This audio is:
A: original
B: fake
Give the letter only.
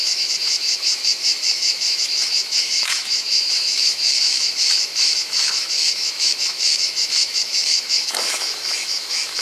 B